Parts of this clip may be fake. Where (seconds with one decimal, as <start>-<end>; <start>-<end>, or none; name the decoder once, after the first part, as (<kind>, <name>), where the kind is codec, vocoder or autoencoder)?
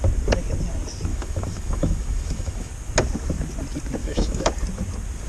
1.1-2.7 (autoencoder, DAC-VAE); 4.0-4.5